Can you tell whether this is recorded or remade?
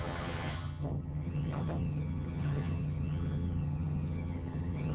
remade